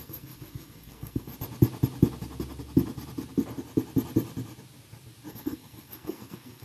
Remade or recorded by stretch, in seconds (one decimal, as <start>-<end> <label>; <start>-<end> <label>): 0.0-1.3 remade; 1.3-5.3 recorded; 5.3-6.6 remade